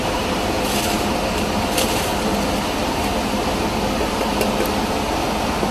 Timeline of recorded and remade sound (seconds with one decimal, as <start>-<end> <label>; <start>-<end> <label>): 0.0-2.1 remade; 2.1-5.7 recorded